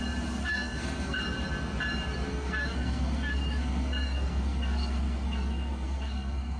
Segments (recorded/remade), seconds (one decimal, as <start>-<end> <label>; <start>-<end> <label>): 0.0-0.4 recorded; 0.4-1.2 remade; 1.2-2.3 recorded; 2.3-6.6 remade